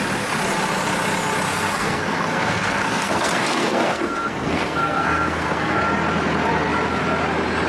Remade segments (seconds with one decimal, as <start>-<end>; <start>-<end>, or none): 1.5-5.8